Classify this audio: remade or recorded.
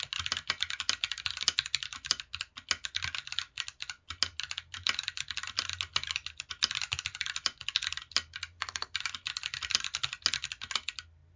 recorded